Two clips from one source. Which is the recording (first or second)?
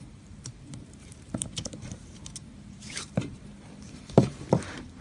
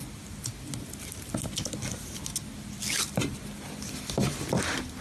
second